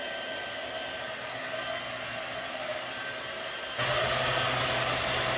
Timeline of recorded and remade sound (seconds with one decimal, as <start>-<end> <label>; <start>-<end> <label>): 0.0-5.4 recorded